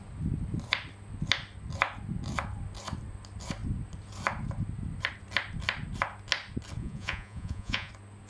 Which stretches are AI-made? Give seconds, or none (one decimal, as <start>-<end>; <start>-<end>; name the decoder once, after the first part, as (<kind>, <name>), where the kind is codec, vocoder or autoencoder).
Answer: 6.8-7.9 (vocoder, Vocos)